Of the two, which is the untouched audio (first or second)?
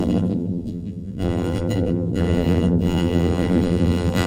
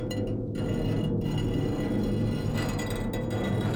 second